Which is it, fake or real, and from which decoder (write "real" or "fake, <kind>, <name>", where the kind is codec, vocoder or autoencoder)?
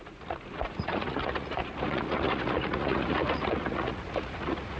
fake, vocoder, Vocos